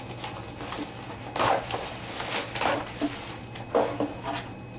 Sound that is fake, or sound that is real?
real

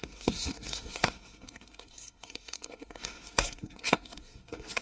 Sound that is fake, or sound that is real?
fake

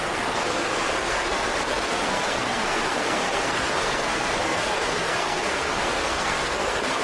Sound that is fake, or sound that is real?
fake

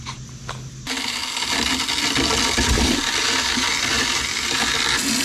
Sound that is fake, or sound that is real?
real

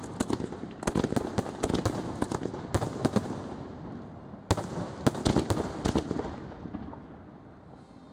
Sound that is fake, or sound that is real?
real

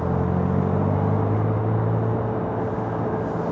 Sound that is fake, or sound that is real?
real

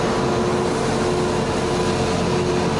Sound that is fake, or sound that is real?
real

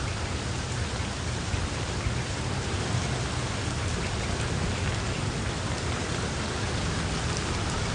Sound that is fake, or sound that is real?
real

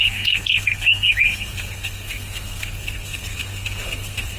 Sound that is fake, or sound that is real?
fake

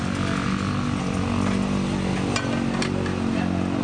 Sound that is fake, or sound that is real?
real